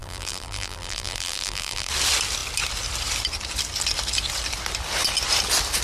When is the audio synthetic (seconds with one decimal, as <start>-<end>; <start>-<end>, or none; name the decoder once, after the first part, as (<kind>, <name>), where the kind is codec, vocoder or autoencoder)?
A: 0.0-1.9 (vocoder, BigVGAN v2)